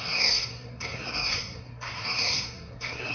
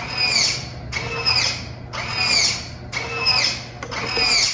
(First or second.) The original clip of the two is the second